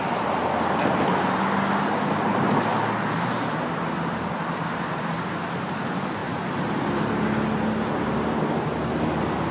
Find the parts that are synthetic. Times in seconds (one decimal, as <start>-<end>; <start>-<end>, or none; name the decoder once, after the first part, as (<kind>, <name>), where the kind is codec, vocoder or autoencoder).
6.2-6.8 (vocoder, BigVGAN v2)